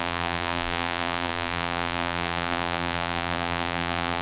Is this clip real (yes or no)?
no